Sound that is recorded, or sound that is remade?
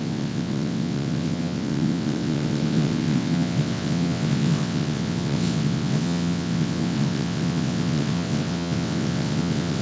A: remade